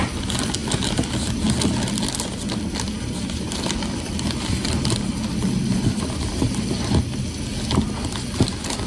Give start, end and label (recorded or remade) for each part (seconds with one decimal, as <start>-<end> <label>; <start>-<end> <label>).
0.0-8.9 recorded